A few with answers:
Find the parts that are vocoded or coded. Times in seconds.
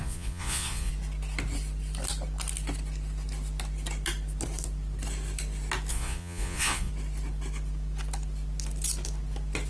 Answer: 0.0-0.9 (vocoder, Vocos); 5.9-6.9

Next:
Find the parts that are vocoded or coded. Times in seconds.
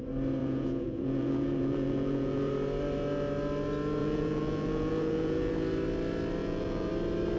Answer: 0.4-2.5 (vocoder, Vocos); 4.0-5.5; 6.4-6.9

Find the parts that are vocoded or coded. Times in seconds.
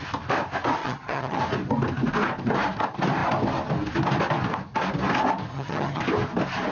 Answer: 0.8-1.4 (vocoder, HiFi-GAN); 5.5-6.0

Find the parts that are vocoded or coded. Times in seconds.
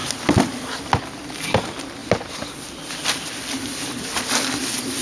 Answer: none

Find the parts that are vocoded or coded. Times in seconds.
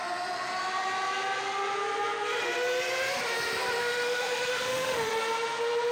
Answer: 3.8-5.1 (autoencoder, DAC-VAE)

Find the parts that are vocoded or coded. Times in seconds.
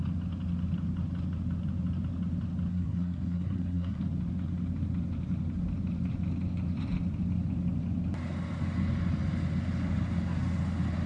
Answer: 2.7-4.0 (codec, SNAC)